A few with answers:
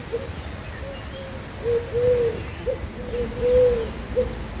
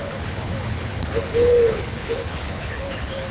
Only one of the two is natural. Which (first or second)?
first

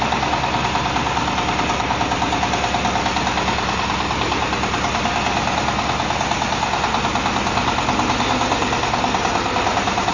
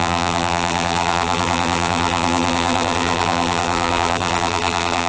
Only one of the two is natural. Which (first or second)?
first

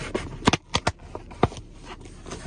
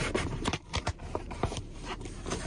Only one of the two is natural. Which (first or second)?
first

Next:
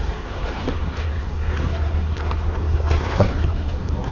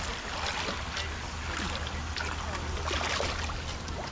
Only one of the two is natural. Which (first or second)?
second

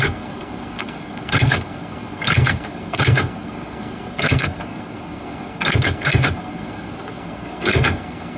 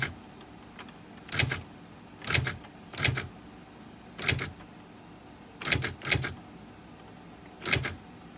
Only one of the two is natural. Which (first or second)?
second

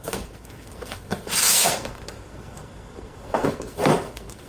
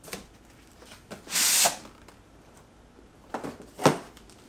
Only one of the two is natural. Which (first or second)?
second